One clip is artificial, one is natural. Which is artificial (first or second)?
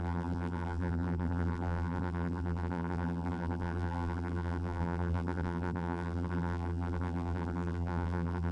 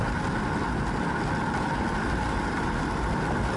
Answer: first